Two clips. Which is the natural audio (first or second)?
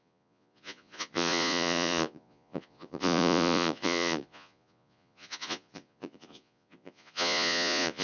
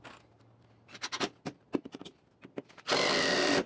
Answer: second